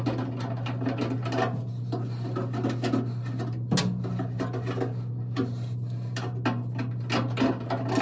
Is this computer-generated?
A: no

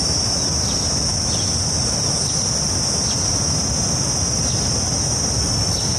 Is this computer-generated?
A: no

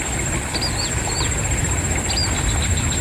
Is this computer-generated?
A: no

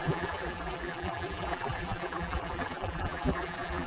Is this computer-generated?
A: yes